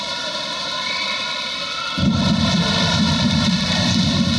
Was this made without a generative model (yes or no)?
no